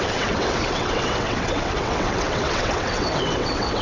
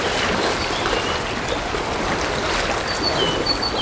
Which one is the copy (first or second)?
first